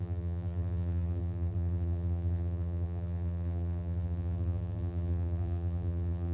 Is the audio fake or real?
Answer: fake